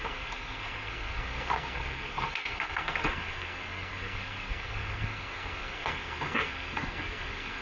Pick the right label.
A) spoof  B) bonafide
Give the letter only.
A